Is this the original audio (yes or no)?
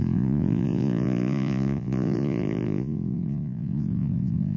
no